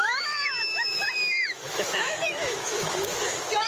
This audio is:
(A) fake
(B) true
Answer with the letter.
A